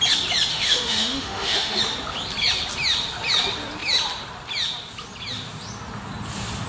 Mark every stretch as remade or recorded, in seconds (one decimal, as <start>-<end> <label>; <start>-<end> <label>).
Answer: 0.0-0.5 recorded; 0.5-1.8 remade; 1.8-6.7 recorded